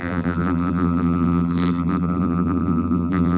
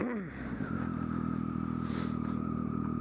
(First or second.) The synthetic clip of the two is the first